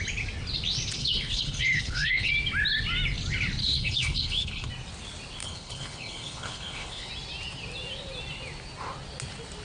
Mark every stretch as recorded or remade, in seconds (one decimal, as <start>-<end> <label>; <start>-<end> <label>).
0.0-1.0 recorded; 1.0-2.3 remade; 2.3-3.6 recorded; 3.6-4.7 remade; 4.7-5.4 recorded; 5.4-7.1 remade; 7.1-9.6 recorded